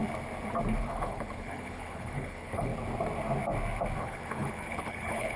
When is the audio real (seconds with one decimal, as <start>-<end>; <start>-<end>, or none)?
0.0-0.8; 2.7-4.0